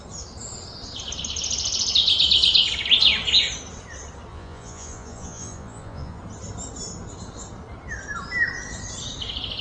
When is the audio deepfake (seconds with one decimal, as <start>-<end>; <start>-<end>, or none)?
4.3-6.2

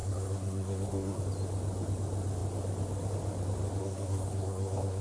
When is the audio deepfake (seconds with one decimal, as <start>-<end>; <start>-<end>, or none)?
0.0-1.2; 3.8-5.0

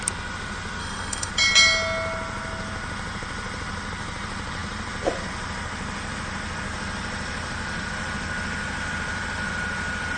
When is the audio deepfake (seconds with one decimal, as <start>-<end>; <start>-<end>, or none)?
0.8-1.3